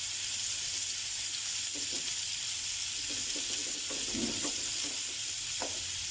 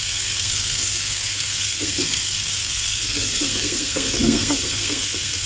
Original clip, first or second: first